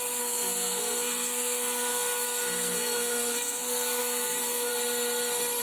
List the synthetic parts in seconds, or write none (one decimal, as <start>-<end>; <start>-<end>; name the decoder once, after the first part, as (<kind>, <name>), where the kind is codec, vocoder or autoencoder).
0.0-4.7 (codec, SNAC)